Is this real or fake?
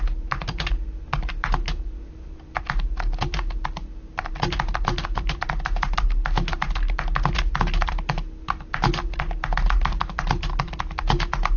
real